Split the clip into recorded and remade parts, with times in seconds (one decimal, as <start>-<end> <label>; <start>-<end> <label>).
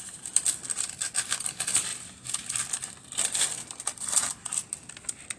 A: 0.0-5.4 recorded